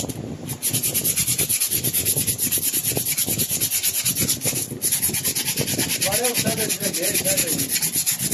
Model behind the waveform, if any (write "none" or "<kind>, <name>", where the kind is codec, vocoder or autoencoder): none